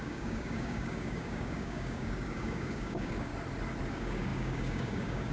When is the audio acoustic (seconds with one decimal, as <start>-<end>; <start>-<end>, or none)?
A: 3.3-3.9